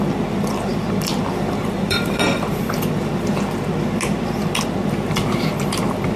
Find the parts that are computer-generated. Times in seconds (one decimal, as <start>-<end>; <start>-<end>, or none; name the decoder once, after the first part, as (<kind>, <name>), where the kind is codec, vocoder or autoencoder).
0.7-3.3 (vocoder, BigVGAN v2)